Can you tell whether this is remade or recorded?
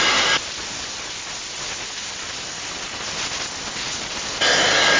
recorded